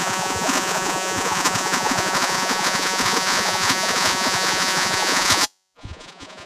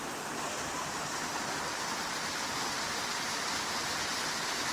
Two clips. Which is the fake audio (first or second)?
first